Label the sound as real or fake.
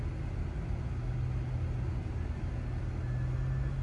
real